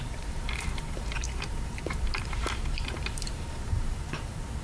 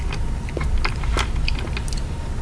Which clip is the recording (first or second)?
second